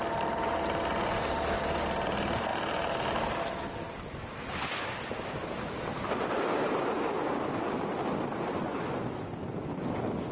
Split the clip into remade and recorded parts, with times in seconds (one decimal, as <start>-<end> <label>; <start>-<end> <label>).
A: 0.0-10.3 recorded